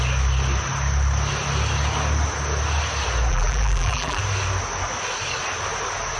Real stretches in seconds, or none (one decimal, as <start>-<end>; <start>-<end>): 0.0-3.3; 4.2-6.2